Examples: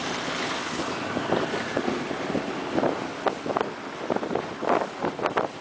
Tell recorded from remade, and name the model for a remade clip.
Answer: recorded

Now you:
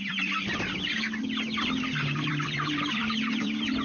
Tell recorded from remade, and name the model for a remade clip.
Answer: remade, vocoder, BigVGAN v2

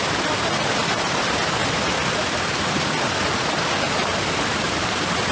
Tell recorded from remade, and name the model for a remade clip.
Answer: recorded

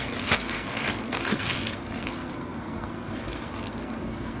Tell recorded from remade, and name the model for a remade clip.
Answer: remade, codec, SNAC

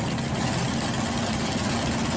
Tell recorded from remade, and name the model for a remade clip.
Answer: recorded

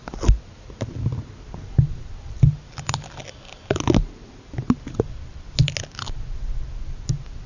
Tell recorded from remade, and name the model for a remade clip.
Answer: recorded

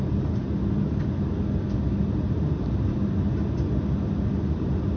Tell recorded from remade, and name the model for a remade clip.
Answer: recorded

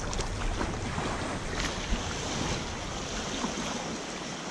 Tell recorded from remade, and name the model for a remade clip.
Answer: recorded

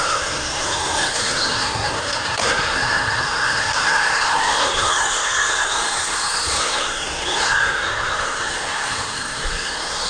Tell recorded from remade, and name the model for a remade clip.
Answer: remade, codec, SNAC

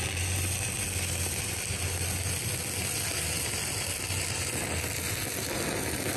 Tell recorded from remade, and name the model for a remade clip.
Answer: recorded